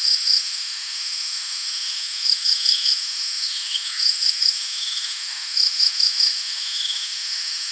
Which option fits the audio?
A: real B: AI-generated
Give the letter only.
B